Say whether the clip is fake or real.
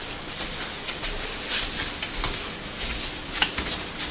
real